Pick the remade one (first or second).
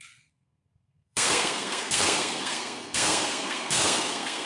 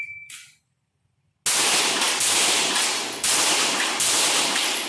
first